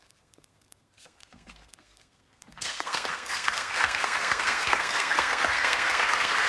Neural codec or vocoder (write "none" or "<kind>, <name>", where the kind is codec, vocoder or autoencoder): codec, SNAC